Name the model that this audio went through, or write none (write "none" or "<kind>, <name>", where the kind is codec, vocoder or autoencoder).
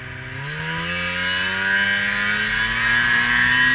none